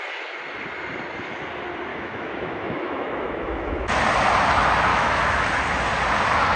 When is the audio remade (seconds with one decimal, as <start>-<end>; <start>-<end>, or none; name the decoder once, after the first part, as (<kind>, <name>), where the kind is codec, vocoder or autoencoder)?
1.9-3.9 (autoencoder, DAC-VAE); 4.9-5.5